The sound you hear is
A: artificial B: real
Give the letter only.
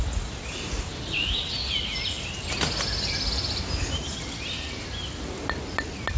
B